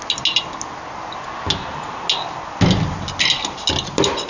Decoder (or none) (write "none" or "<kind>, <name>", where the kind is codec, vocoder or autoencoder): none